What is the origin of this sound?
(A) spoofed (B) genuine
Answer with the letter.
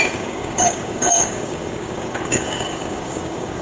A